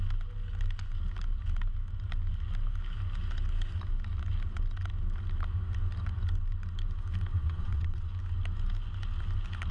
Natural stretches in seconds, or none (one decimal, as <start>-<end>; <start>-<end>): 0.0-7.3; 8.1-9.7